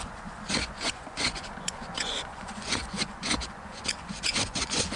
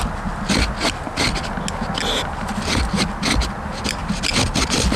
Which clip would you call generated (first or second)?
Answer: first